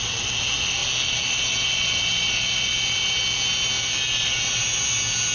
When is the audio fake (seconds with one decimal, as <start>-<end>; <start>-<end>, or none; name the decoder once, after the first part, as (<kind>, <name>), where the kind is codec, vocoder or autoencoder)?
none